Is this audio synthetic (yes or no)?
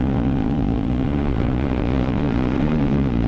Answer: yes